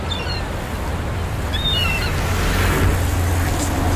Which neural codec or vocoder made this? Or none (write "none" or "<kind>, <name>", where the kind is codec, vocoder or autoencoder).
none